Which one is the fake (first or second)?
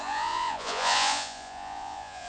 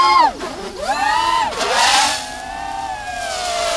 first